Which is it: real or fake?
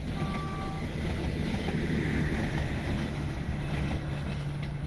real